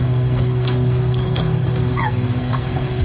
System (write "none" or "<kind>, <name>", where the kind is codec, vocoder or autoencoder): codec, SNAC